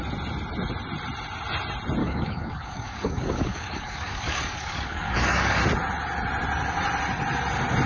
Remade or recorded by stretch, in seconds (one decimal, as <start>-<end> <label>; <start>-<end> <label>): 0.0-2.0 recorded; 2.0-5.6 remade; 5.6-7.9 recorded